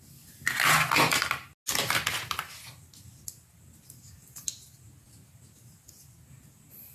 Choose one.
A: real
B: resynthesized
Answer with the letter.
A